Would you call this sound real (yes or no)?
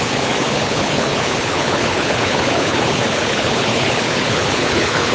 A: no